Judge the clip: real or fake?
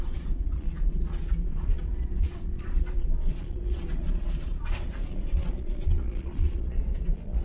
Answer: fake